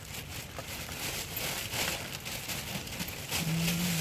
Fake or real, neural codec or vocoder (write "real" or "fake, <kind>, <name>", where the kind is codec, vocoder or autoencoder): real